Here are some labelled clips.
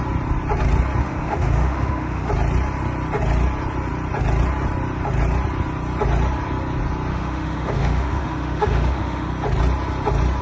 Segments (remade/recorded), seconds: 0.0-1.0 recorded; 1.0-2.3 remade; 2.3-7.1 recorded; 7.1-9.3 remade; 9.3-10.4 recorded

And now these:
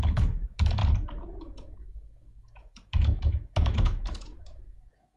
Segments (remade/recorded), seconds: 0.0-0.8 remade; 0.8-1.4 recorded; 1.4-5.2 remade

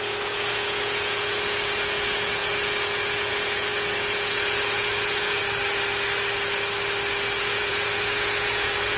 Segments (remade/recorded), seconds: 0.0-5.4 remade; 5.4-7.4 recorded; 7.4-9.0 remade